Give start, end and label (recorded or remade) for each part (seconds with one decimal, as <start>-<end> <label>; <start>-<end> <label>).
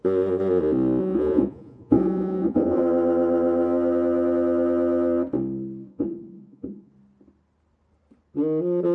0.0-1.0 recorded; 1.0-2.8 remade; 2.8-5.9 recorded; 5.9-6.9 remade; 6.9-8.9 recorded